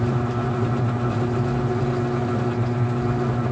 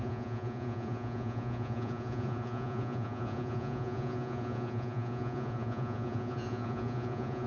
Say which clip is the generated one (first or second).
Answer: second